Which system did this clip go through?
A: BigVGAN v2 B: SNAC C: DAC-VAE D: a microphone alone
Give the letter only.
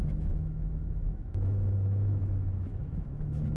C